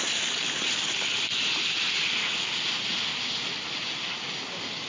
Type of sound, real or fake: real